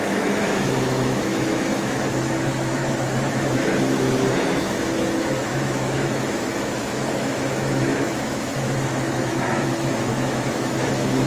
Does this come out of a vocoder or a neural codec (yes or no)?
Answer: yes